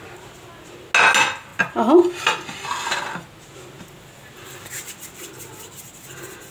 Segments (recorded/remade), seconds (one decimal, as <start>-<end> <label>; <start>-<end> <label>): 0.0-6.5 recorded